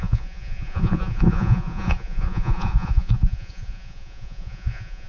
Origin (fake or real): fake